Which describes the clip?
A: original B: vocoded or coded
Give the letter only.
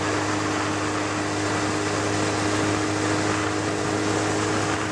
A